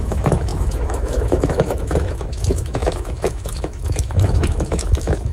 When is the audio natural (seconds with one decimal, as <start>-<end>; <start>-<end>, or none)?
none